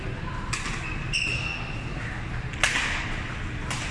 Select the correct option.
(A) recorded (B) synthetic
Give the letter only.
A